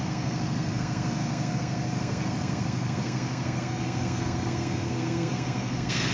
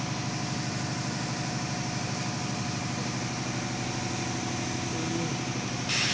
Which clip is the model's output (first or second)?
first